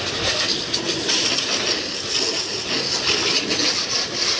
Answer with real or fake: real